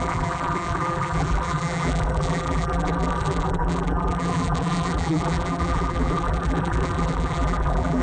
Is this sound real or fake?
fake